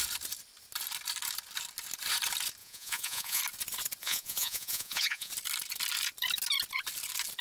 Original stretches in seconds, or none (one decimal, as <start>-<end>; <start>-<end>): 0.0-2.6; 3.4-4.0; 5.3-7.4